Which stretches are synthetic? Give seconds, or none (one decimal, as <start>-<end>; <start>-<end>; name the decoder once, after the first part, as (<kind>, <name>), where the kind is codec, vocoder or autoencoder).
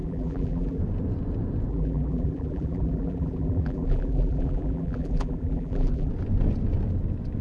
0.0-0.8 (vocoder, BigVGAN v2); 1.7-6.1